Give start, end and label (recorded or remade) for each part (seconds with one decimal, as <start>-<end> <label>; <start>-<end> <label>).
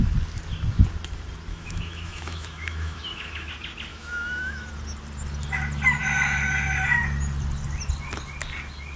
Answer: 0.0-1.5 recorded; 1.5-3.5 remade; 3.5-3.9 recorded; 3.9-4.7 remade; 4.7-9.0 recorded